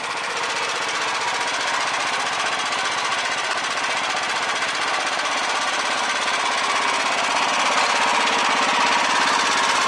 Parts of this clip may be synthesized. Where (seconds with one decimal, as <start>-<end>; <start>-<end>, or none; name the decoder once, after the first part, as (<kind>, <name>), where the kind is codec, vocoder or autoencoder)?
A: none